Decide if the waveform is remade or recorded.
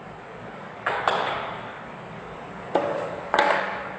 remade